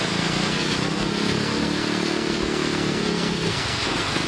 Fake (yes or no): yes